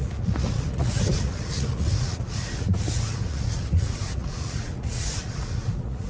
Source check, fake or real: fake